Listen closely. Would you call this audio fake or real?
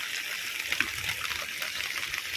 real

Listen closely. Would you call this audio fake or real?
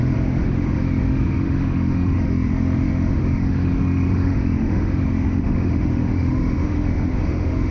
fake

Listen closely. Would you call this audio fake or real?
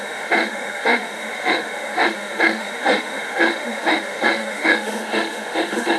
fake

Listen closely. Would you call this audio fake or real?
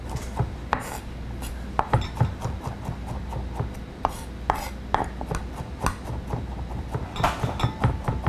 real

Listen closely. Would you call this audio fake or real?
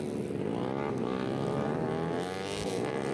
real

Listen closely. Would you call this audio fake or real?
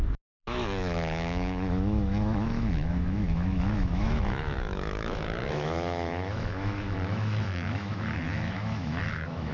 fake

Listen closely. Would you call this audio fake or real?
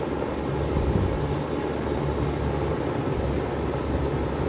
real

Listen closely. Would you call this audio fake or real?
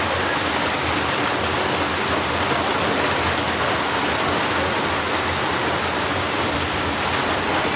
real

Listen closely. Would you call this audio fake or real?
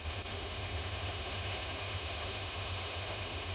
fake